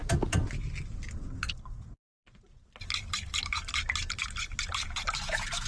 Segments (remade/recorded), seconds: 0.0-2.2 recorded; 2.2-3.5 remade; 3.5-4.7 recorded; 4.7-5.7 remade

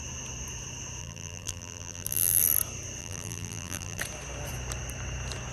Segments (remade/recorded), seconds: 0.0-1.0 recorded; 1.0-2.4 remade; 2.4-3.0 recorded; 3.0-4.0 remade; 4.0-5.5 recorded

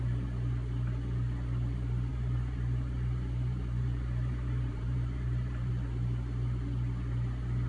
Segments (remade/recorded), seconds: 0.0-2.1 recorded; 2.1-5.7 remade; 5.7-7.7 recorded